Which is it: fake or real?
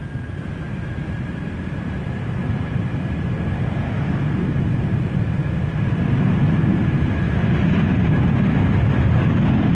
real